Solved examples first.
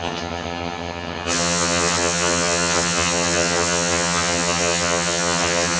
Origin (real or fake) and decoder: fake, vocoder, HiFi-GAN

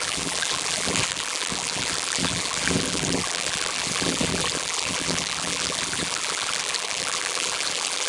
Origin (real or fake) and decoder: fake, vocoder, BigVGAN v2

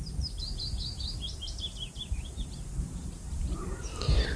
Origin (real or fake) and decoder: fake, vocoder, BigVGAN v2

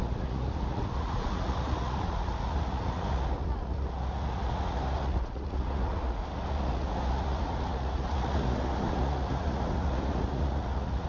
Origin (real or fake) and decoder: fake, vocoder, Vocos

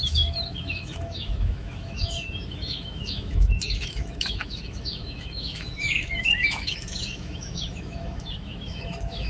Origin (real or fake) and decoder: fake, autoencoder, DAC-VAE